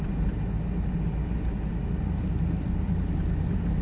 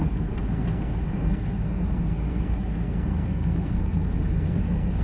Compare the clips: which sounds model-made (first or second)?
second